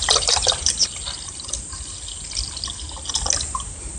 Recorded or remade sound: recorded